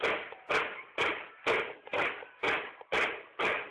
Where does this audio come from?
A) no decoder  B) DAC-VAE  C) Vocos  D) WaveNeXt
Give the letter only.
A